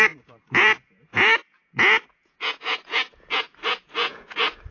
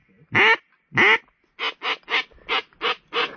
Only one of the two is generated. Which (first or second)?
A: first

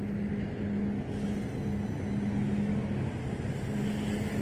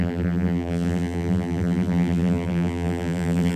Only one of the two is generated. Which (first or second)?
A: second